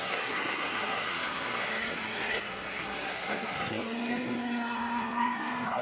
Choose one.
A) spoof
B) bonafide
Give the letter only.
A